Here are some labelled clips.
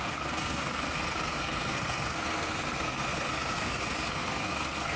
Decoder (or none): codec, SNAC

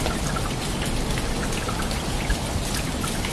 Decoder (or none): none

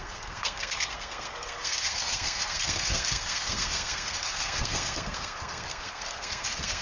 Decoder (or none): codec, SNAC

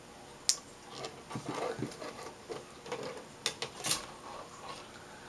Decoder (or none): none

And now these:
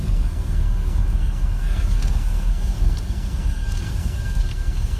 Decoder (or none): codec, SNAC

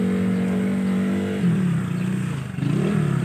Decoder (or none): none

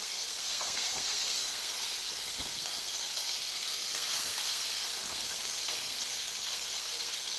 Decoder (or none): codec, SNAC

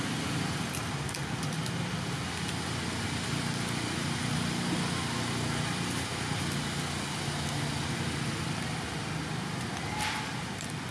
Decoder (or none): none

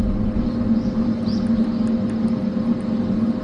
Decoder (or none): none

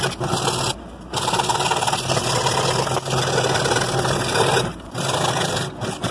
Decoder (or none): none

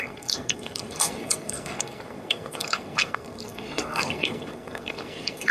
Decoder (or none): codec, SNAC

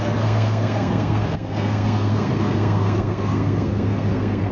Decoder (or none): codec, SNAC